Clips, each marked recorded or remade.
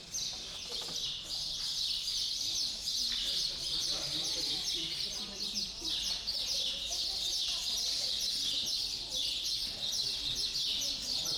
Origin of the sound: recorded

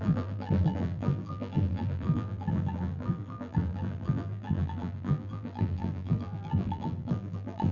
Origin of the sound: remade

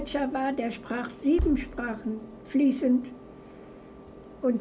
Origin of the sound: recorded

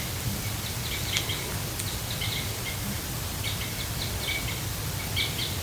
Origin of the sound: recorded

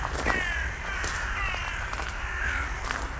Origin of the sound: recorded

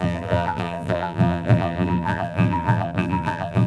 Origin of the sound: remade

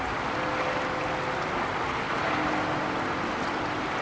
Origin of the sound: recorded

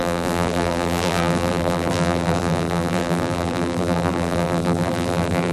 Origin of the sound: remade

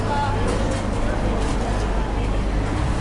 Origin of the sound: recorded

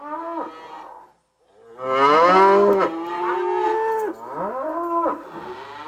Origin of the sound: recorded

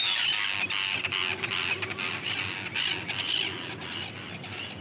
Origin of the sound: recorded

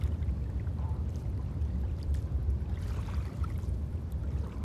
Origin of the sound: remade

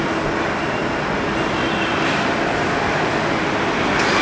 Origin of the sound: remade